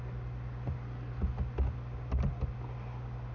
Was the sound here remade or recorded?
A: recorded